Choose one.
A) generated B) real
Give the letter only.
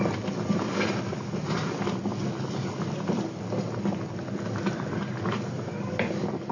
B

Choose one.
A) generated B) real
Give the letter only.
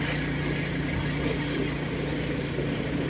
B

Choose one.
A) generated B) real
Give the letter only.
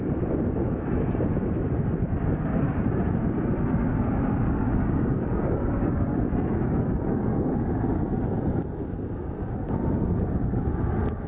B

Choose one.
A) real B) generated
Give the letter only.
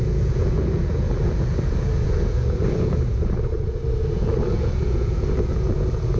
B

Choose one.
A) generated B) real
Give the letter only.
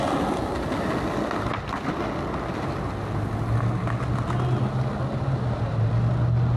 B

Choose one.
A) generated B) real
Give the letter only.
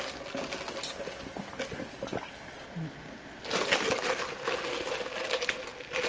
B